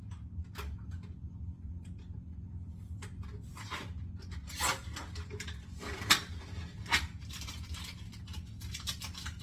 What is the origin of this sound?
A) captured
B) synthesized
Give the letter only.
A